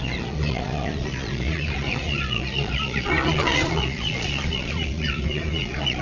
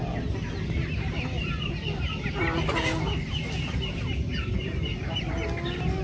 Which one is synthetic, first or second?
first